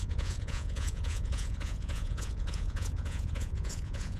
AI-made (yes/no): yes